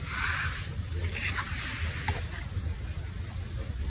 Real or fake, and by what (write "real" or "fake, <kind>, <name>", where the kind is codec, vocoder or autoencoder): real